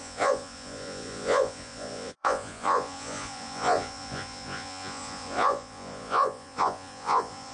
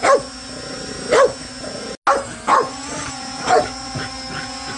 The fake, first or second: first